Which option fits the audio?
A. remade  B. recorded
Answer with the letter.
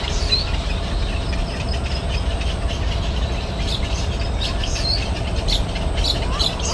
B